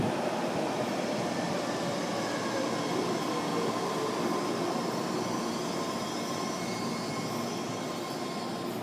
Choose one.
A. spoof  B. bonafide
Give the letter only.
B